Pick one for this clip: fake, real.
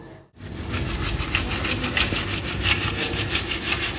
real